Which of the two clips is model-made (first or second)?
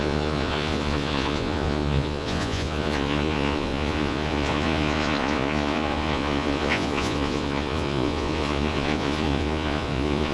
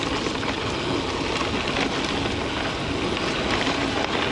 first